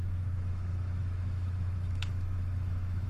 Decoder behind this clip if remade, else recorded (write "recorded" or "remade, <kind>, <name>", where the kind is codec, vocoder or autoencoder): remade, autoencoder, DAC-VAE